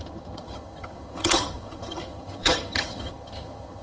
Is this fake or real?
fake